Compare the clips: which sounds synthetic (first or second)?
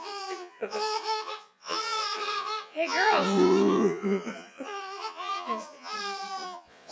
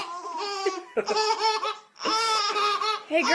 first